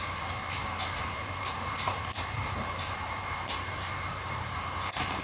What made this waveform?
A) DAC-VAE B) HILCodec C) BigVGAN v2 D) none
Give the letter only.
C